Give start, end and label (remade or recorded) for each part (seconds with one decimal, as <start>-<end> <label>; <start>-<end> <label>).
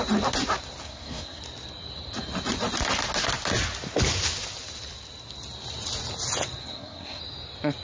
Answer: 0.0-0.8 recorded; 0.8-1.4 remade; 1.4-6.6 recorded; 6.6-7.2 remade; 7.2-7.8 recorded